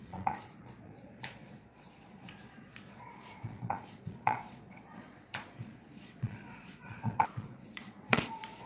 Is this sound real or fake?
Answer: fake